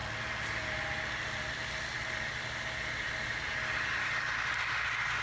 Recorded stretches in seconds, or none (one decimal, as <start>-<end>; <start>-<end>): 0.0-5.2

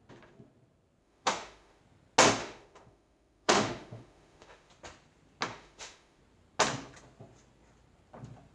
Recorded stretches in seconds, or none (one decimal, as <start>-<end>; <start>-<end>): 0.0-1.0; 1.8-2.4; 4.7-5.5; 6.2-8.5

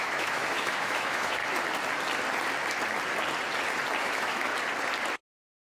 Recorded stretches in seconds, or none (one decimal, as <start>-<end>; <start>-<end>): 1.4-4.0; 4.5-5.7

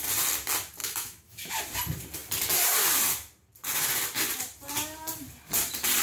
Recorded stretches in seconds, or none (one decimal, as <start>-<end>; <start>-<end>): 0.0-0.8; 1.5-6.0

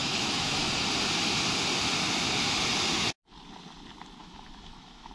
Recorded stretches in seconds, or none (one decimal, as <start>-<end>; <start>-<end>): 0.6-4.2

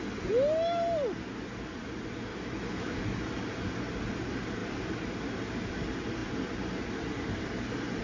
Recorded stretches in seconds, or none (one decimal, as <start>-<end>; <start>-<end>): 0.0-2.3; 3.2-8.0

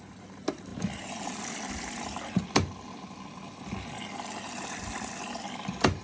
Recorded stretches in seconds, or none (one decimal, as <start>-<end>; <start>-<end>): 0.0-6.0